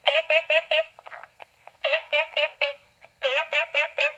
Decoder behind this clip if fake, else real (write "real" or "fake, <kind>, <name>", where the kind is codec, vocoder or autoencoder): fake, codec, SNAC